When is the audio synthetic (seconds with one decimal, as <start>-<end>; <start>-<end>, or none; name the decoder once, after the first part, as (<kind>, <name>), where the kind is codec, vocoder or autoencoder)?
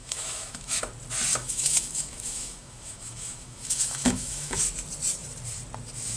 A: 0.0-0.8 (autoencoder, DAC-VAE); 1.3-4.6